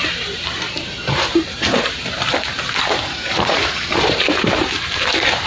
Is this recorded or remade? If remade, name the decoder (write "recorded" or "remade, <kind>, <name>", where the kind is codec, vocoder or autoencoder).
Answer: remade, vocoder, BigVGAN v2